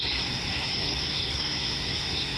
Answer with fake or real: fake